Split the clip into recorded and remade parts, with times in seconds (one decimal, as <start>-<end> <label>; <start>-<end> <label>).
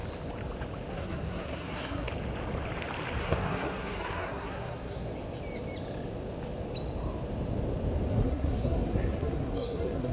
0.0-0.9 recorded; 0.9-2.1 remade; 2.1-3.2 recorded; 3.2-5.1 remade; 5.1-8.1 recorded; 8.1-10.1 remade